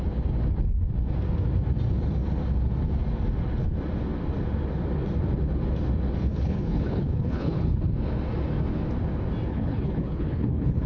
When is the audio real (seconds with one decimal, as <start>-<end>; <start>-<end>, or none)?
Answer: 0.0-6.2; 7.8-9.5